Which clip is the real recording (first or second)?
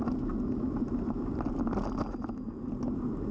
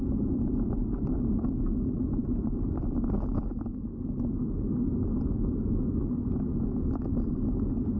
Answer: first